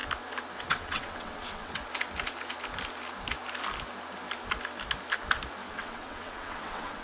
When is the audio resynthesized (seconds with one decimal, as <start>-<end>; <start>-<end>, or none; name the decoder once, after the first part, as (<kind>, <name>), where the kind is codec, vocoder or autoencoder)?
0.6-1.8 (vocoder, WaveNeXt); 5.7-7.0